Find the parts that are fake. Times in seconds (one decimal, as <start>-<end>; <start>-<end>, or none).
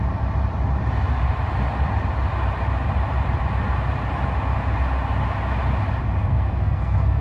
6.2-7.2